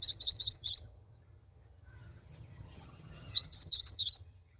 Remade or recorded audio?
remade